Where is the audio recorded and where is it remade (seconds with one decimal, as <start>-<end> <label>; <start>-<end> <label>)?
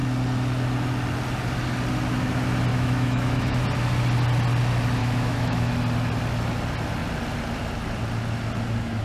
0.0-2.7 recorded; 2.7-3.6 remade; 3.6-5.0 recorded; 5.0-5.7 remade; 5.7-9.0 recorded